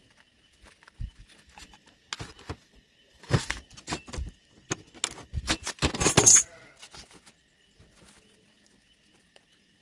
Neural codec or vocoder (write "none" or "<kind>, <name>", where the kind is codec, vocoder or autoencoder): none